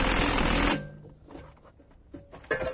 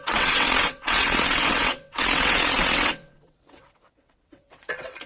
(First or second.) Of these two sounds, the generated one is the second